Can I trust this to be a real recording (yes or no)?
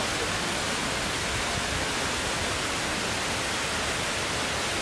yes